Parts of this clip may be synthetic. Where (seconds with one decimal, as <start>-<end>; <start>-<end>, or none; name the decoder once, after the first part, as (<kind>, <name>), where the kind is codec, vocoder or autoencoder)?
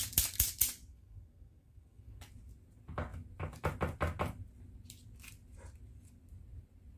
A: 0.9-2.2 (codec, SNAC)